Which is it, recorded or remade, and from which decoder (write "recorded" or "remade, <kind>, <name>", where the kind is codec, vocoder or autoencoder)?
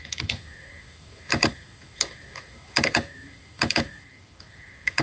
remade, autoencoder, DAC-VAE